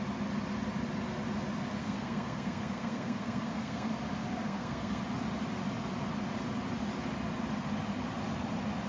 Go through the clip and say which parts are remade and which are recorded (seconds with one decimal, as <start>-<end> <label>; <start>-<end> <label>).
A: 0.0-1.8 recorded; 1.8-3.9 remade; 3.9-4.3 recorded; 4.3-5.0 remade; 5.0-8.9 recorded